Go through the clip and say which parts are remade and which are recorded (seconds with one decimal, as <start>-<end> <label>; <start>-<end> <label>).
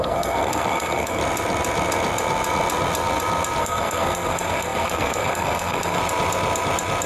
0.0-1.2 remade; 1.2-3.6 recorded; 3.6-6.0 remade; 6.0-7.1 recorded